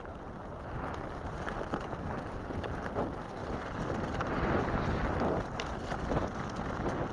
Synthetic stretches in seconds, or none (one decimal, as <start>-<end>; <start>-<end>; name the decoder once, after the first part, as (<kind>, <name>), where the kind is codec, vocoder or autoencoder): none